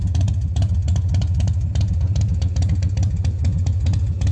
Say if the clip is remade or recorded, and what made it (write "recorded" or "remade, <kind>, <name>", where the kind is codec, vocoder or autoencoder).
remade, vocoder, Vocos